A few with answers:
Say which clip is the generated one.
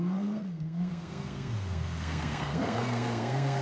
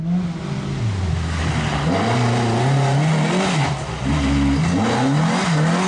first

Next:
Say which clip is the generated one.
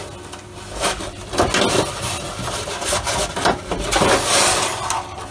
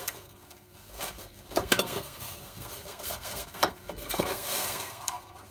second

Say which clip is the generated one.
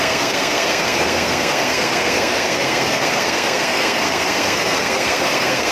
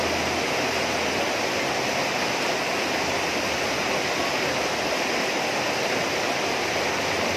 first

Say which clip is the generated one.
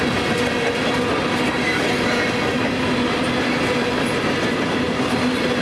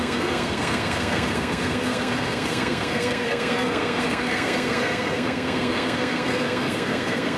second